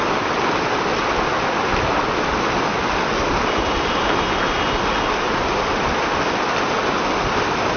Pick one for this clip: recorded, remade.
recorded